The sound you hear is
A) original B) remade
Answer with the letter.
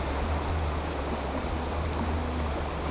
A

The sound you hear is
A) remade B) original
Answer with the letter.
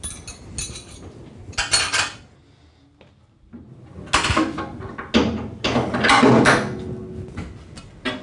B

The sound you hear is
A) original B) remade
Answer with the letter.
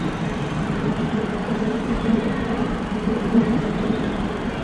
B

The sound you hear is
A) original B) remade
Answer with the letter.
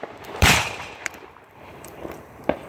B